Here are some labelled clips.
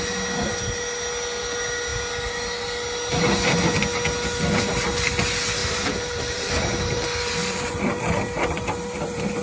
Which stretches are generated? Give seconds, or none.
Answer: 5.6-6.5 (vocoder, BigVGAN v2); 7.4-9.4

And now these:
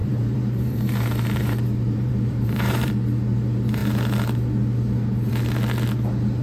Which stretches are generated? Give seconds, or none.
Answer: 0.0-2.9 (vocoder, BigVGAN v2)

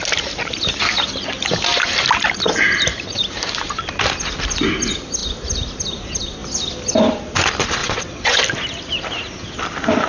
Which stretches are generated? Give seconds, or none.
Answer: 7.8-8.4 (vocoder, WaveNeXt)

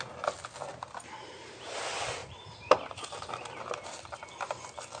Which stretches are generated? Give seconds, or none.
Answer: 0.7-1.7 (vocoder, BigVGAN v2); 2.2-4.3